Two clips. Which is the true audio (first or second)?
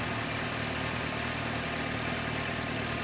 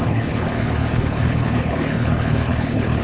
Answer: first